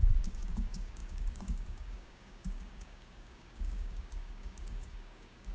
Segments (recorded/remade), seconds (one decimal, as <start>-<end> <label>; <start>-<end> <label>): 0.0-5.5 remade